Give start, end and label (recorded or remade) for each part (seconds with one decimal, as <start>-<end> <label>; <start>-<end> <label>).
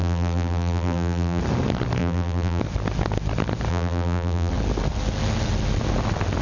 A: 0.0-1.4 remade; 1.4-2.0 recorded; 2.0-2.6 remade; 2.6-3.7 recorded; 3.7-4.5 remade; 4.5-6.4 recorded